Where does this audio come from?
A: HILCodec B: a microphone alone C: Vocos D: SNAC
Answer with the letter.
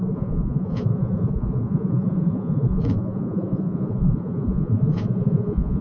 C